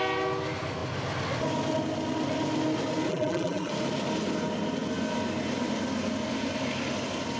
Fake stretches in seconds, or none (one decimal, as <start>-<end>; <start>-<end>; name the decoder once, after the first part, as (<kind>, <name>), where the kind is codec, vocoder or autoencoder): 3.1-3.7 (vocoder, BigVGAN v2)